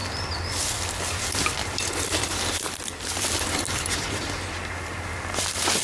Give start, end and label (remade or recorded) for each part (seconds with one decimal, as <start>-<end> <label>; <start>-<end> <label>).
0.0-0.6 remade; 0.6-1.6 recorded; 1.6-5.1 remade; 5.1-5.8 recorded